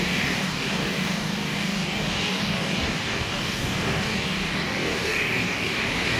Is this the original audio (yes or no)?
no